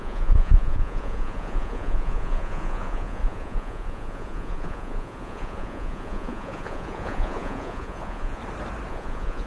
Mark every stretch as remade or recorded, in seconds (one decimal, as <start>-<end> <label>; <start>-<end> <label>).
0.0-8.4 remade; 8.4-8.9 recorded; 8.9-9.5 remade